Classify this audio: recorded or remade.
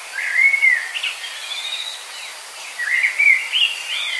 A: recorded